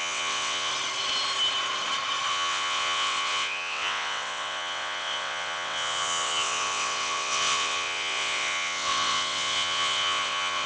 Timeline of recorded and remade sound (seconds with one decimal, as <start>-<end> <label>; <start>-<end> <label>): 0.0-0.7 remade; 0.7-2.3 recorded; 2.3-10.7 remade